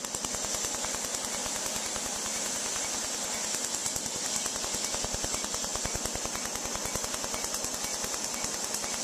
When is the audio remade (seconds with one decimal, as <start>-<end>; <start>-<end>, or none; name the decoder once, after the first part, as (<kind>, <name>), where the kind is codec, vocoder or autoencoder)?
1.4-2.8 (vocoder, BigVGAN v2); 3.8-4.6